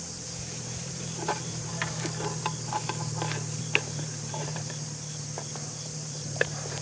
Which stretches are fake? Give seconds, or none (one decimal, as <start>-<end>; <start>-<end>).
0.0-1.7; 3.6-5.1; 5.8-6.8